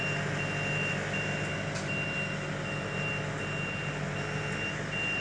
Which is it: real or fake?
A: real